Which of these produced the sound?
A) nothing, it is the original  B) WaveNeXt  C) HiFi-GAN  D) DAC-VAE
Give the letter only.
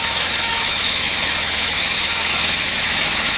D